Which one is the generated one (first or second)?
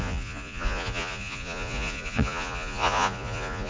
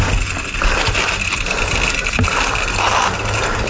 first